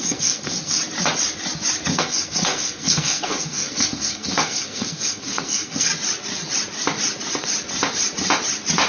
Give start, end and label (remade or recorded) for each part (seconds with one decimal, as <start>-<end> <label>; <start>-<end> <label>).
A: 0.0-0.8 remade; 0.8-1.9 recorded; 1.9-5.9 remade; 5.9-8.9 recorded